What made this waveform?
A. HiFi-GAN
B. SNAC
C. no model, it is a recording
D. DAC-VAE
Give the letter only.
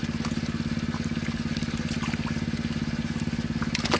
C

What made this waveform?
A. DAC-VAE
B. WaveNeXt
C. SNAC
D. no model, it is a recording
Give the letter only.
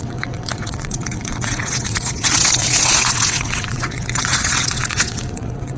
B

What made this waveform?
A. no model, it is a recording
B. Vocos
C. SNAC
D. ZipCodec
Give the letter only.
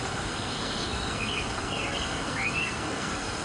C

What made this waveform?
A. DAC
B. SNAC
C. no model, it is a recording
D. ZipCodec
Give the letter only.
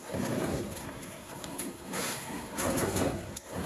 B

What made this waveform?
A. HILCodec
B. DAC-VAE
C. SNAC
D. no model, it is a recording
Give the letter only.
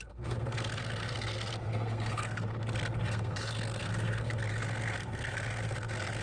C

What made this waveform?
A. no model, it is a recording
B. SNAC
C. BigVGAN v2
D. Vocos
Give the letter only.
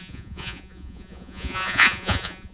D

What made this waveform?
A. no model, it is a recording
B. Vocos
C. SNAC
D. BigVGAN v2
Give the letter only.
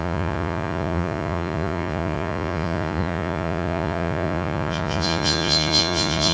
B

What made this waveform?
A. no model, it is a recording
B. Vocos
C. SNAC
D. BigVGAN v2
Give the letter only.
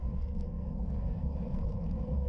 C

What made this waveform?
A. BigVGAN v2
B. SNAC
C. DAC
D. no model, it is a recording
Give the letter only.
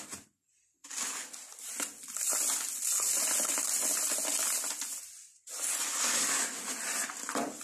D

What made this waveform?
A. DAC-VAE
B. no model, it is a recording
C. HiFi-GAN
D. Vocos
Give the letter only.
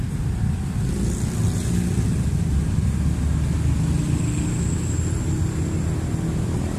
B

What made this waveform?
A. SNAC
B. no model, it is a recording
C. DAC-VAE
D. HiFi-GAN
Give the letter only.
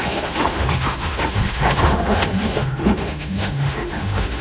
C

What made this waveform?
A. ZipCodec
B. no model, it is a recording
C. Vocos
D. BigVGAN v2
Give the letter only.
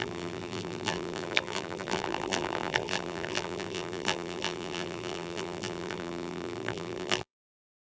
D